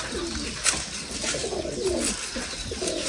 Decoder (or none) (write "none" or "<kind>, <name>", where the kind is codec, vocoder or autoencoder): none